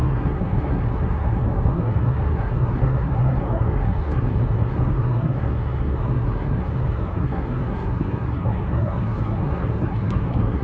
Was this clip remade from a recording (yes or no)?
yes